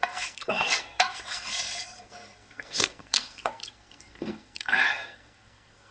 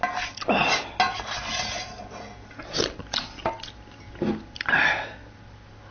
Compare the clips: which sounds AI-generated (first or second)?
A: first